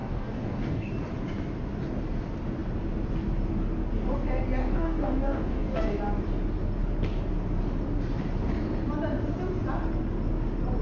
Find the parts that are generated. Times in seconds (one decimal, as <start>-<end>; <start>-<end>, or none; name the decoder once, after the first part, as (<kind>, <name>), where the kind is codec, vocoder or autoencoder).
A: 0.0-0.9 (codec, DAC); 4.6-6.0